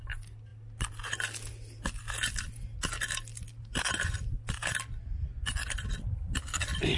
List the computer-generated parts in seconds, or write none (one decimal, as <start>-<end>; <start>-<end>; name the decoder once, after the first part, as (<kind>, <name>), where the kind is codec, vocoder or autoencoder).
none